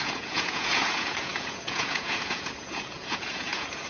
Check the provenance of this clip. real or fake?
fake